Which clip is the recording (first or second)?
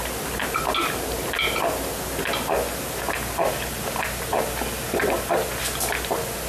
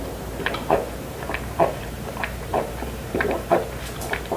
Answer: first